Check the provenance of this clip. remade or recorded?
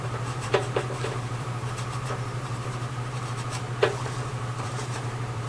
remade